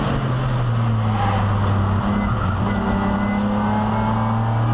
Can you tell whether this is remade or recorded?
recorded